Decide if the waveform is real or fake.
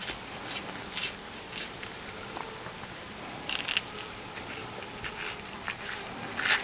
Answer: real